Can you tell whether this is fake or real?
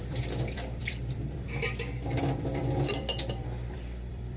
fake